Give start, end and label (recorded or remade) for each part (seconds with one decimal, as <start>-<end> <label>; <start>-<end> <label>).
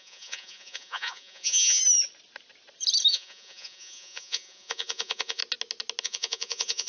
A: 0.0-1.8 remade; 1.8-3.1 recorded; 3.1-5.4 remade; 5.4-6.0 recorded; 6.0-6.9 remade